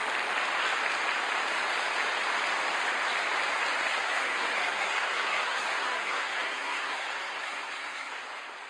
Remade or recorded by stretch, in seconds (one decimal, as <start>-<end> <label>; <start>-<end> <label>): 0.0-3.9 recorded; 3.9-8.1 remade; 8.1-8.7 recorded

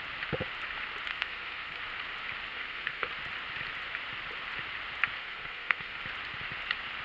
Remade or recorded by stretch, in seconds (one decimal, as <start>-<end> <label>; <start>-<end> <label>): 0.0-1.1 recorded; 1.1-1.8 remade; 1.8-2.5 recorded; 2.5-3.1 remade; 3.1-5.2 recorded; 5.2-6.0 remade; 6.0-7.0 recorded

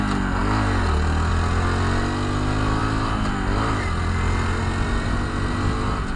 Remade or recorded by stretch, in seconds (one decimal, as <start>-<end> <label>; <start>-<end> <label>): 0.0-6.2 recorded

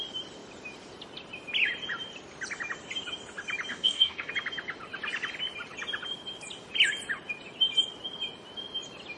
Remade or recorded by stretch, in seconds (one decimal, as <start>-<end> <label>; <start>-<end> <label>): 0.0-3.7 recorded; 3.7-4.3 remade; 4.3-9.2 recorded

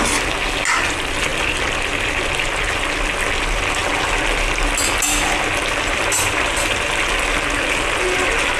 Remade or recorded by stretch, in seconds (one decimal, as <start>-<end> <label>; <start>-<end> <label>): 0.0-8.6 recorded

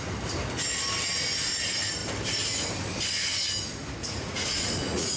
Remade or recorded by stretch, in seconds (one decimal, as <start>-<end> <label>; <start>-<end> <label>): 0.0-4.0 recorded; 4.0-5.2 remade

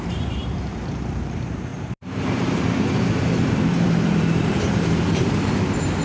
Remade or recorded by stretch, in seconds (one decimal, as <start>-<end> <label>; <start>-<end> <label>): 0.0-6.0 remade

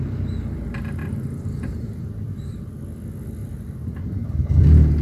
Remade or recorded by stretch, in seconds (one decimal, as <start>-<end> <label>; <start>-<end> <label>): 0.0-1.0 recorded; 1.0-2.7 remade; 2.7-3.4 recorded; 3.4-5.0 remade